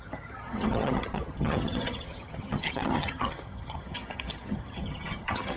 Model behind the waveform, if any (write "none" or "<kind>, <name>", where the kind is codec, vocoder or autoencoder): vocoder, HiFi-GAN